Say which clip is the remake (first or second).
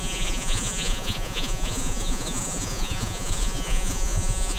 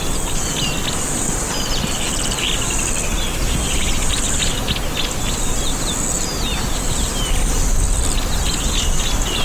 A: first